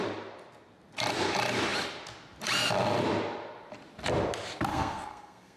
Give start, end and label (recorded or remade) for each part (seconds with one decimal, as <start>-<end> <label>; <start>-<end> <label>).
0.0-4.7 recorded; 4.7-5.6 remade